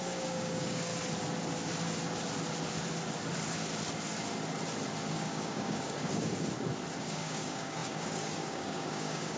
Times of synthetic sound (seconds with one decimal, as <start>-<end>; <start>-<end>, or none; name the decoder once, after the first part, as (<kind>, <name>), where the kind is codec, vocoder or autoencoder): 0.0-0.9 (codec, DAC); 5.1-6.3; 7.0-9.4